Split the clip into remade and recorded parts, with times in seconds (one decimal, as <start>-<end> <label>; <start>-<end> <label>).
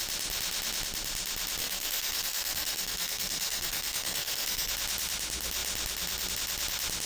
0.0-1.6 recorded; 1.6-4.7 remade; 4.7-7.1 recorded